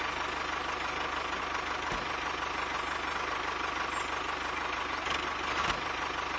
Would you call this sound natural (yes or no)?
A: yes